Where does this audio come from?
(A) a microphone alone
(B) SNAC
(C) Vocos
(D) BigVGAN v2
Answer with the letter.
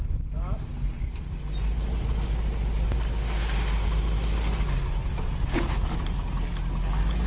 A